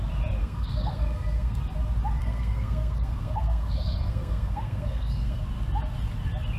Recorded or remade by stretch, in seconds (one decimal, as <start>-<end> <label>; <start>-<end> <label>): 0.0-0.4 recorded; 0.4-1.6 remade; 1.6-2.2 recorded; 2.2-5.4 remade; 5.4-6.6 recorded